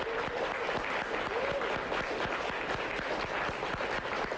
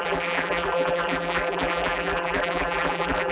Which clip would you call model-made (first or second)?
second